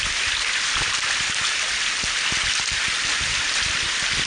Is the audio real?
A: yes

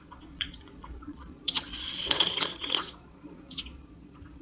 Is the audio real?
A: no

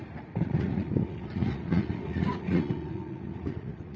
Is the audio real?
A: no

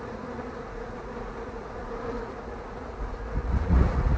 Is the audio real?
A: no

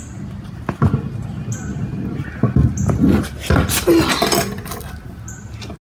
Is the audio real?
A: yes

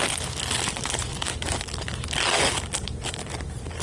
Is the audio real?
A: yes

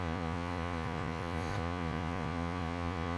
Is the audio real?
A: no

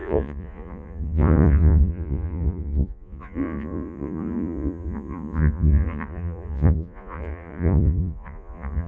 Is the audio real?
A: no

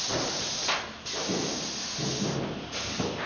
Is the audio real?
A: yes